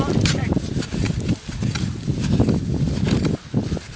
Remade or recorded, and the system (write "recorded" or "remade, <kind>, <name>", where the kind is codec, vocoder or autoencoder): recorded